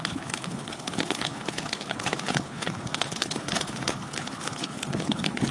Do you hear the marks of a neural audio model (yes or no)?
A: yes